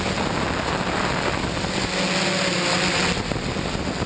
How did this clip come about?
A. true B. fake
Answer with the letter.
A